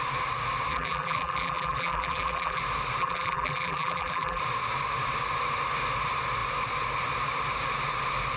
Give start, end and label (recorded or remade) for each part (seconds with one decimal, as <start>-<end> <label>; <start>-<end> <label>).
0.0-0.7 recorded; 0.7-2.6 remade; 2.6-3.0 recorded; 3.0-4.4 remade; 4.4-8.4 recorded